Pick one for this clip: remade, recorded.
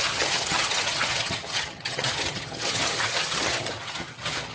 remade